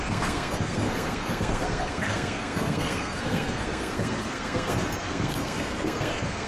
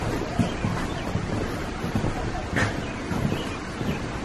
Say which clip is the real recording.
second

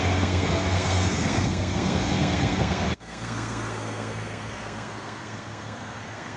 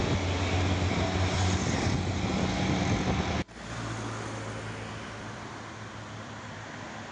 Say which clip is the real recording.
second